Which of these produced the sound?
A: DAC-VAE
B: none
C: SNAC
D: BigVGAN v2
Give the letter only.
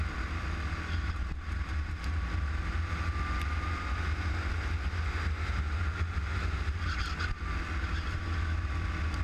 B